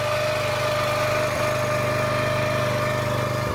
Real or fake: real